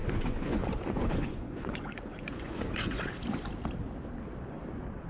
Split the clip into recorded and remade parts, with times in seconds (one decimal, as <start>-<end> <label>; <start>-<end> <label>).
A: 0.0-3.1 remade; 3.1-5.1 recorded